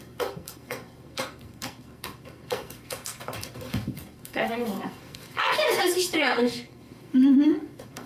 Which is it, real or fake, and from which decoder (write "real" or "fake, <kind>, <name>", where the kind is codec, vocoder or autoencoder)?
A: fake, codec, SNAC